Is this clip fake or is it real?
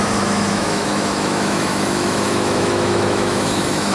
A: fake